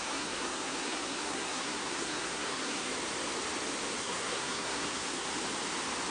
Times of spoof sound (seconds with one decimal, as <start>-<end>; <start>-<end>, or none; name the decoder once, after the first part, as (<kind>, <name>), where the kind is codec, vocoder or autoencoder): 0.0-2.9 (codec, SNAC); 4.0-5.3